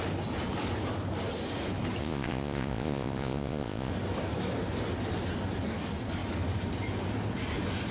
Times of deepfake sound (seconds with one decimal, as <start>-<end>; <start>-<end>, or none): 2.0-3.9